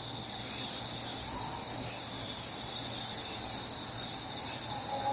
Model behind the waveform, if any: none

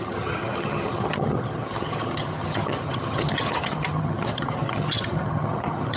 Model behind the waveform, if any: vocoder, HiFi-GAN